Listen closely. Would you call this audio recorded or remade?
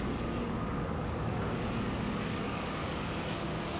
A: remade